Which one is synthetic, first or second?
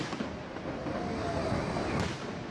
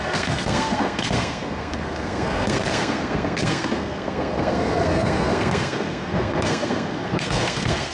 second